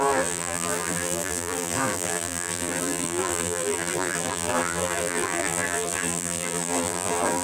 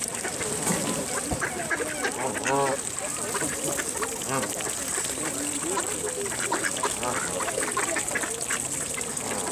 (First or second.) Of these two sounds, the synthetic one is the first